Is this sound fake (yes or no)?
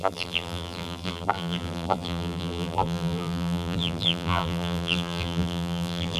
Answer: yes